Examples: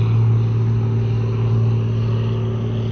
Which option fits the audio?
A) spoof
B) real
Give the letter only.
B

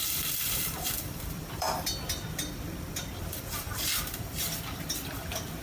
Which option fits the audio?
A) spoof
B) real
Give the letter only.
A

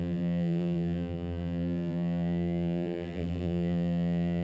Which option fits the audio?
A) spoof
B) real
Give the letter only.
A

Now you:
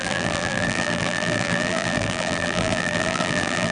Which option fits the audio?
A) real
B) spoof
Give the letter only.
B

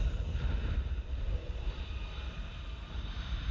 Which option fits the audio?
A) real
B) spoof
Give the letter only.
B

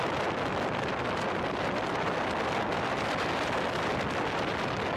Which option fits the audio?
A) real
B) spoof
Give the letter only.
B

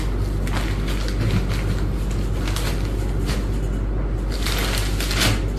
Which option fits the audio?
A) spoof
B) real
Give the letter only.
B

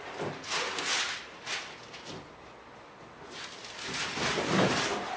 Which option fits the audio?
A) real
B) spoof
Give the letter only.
A